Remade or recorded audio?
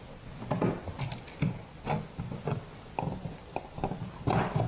recorded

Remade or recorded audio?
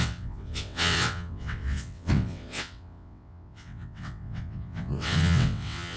remade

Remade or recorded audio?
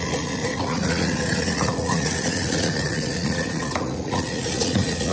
remade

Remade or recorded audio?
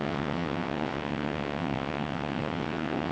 remade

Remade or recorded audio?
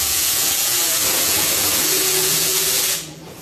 remade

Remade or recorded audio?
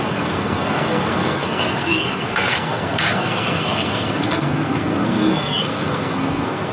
remade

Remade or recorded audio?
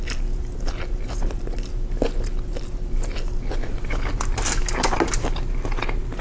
recorded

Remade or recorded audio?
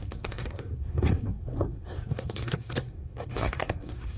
remade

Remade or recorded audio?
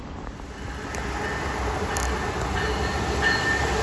recorded